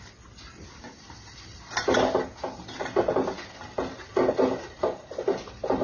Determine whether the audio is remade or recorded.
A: recorded